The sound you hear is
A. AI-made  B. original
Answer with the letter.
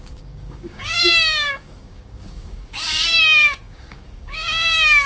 A